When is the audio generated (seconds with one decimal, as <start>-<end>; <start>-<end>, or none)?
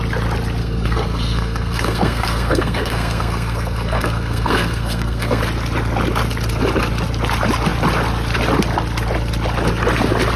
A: 0.6-5.4